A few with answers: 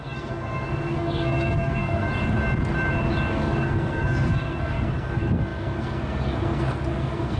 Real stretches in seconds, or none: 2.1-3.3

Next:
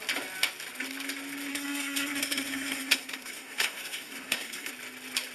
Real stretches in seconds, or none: 0.0-1.5; 4.7-5.3

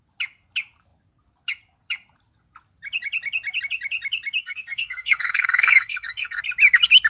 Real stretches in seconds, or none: 0.0-4.4; 6.4-7.1

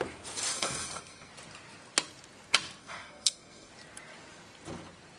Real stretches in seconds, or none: 0.0-0.5; 1.3-2.8; 3.7-5.2

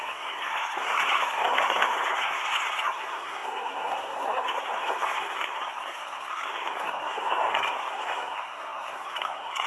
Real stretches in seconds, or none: none

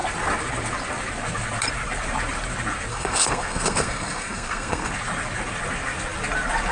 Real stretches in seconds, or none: 0.0-2.9; 4.9-6.7